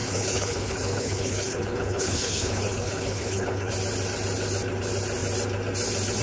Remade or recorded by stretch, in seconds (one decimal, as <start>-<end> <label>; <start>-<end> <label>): 0.0-3.7 remade; 3.7-6.2 recorded